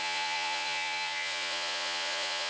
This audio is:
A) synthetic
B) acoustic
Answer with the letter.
A